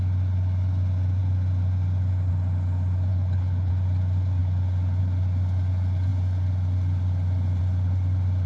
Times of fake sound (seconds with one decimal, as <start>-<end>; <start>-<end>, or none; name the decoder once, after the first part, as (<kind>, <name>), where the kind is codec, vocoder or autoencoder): 3.1-3.7 (codec, HILCodec)